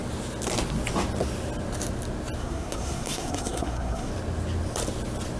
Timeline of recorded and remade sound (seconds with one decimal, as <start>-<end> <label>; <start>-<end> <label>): 0.0-2.4 recorded; 2.4-4.1 remade; 4.1-5.4 recorded